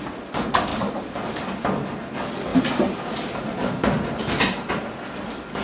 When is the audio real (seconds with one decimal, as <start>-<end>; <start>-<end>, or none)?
0.0-0.7; 1.4-2.5; 4.7-5.6